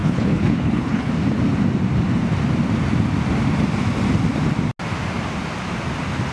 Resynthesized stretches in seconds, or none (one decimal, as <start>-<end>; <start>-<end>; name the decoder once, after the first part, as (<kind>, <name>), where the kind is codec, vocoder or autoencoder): 0.0-1.1 (codec, HILCodec)